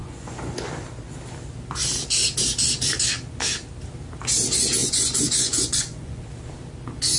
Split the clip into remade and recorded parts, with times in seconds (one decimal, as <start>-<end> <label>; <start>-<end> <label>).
0.0-0.7 remade; 0.7-4.8 recorded; 4.8-6.2 remade; 6.2-7.2 recorded

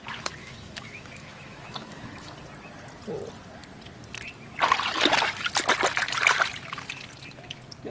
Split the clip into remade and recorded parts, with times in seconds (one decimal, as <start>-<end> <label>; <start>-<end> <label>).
0.0-0.4 recorded; 0.4-2.3 remade; 2.3-7.9 recorded